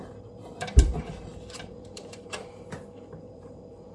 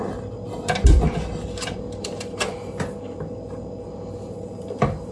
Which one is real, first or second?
second